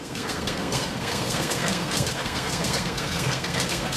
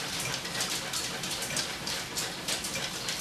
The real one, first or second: second